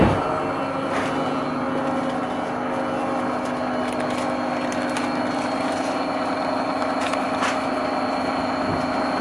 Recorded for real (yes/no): yes